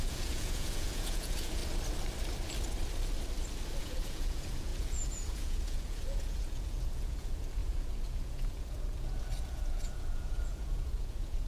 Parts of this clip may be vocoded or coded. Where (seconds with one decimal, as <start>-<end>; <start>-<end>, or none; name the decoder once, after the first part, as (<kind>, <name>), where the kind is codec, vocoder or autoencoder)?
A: 0.0-1.6 (vocoder, Vocos); 3.8-11.5

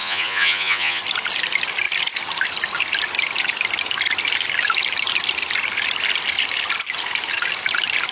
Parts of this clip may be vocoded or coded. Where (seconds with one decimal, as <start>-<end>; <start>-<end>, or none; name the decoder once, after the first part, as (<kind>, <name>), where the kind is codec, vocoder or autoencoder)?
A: 0.0-1.0 (vocoder, Vocos)

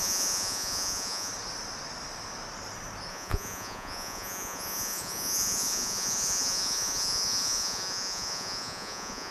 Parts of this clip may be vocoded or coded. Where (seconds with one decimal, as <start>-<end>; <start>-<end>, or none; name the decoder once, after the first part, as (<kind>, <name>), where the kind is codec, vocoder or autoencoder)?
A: 0.0-1.3 (vocoder, Vocos); 3.1-9.3

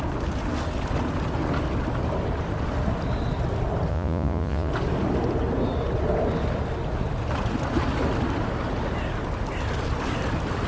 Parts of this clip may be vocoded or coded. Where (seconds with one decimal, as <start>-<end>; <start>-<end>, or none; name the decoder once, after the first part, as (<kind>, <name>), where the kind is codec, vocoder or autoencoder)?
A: 3.9-4.7 (vocoder, Vocos)